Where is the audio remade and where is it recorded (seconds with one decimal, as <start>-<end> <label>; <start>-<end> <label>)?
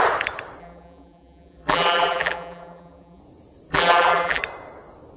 0.0-0.6 recorded; 0.6-3.2 remade; 3.2-3.7 recorded; 3.7-4.4 remade; 4.4-5.2 recorded